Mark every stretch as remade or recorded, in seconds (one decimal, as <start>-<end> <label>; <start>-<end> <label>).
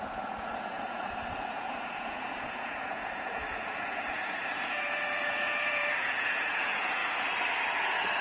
0.0-7.0 remade; 7.0-8.2 recorded